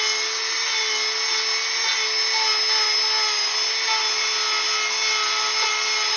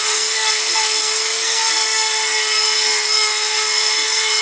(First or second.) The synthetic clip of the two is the second